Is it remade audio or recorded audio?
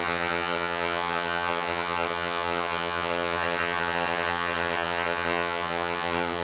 remade